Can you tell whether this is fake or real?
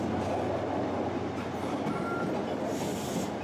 real